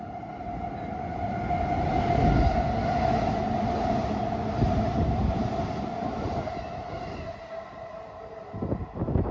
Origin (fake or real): real